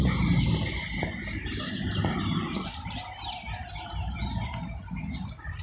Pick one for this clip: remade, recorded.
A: recorded